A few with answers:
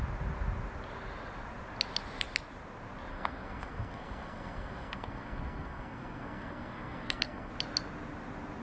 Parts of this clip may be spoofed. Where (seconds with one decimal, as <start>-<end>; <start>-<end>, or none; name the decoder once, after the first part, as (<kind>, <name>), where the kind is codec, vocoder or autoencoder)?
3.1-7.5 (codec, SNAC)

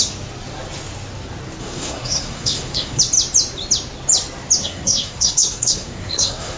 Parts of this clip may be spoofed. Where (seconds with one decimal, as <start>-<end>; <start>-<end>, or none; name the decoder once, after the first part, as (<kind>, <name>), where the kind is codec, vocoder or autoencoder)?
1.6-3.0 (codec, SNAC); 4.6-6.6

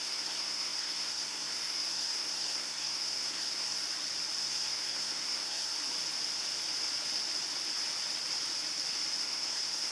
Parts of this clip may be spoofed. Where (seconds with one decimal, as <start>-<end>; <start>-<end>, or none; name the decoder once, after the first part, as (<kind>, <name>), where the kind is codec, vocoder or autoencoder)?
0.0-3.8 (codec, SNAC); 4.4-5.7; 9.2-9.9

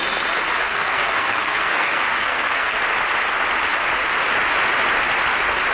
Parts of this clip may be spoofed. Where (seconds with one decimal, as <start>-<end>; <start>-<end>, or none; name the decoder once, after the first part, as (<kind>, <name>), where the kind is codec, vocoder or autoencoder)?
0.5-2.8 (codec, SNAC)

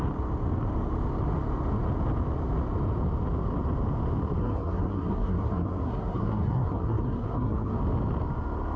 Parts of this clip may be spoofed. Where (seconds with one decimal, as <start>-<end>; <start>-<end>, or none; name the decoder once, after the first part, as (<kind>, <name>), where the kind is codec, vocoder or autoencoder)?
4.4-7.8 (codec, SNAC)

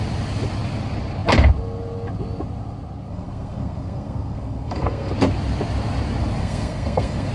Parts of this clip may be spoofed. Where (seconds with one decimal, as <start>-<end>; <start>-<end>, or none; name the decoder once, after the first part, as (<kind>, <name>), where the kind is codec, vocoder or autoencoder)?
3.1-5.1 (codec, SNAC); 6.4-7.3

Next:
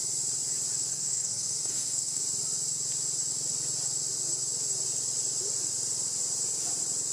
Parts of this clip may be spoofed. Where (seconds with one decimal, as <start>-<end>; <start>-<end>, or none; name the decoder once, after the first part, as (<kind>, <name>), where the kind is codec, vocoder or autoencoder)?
0.9-2.2 (codec, SNAC)

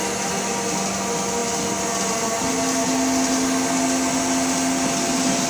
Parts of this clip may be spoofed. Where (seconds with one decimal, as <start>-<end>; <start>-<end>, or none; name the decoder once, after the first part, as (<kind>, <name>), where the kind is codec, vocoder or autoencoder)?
none